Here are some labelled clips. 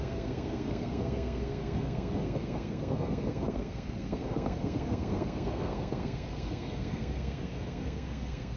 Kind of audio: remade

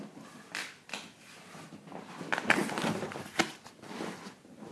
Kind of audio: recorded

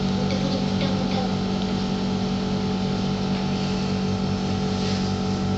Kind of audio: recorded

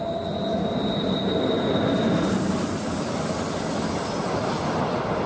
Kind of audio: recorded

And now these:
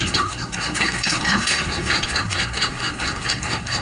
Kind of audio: remade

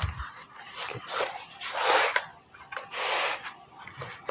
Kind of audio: recorded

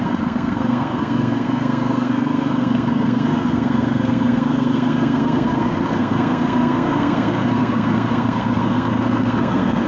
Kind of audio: remade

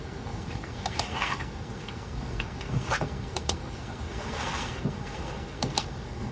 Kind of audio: remade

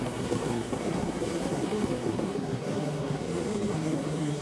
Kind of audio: remade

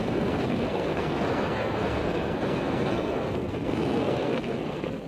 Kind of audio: remade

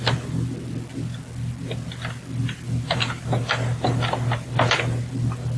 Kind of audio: recorded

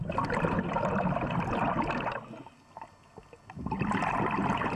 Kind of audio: recorded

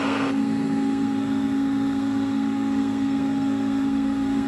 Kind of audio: remade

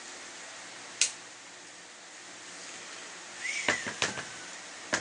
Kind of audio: recorded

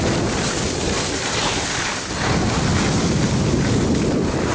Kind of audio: recorded